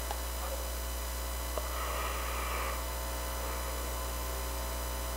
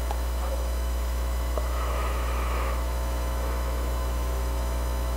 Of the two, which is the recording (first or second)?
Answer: first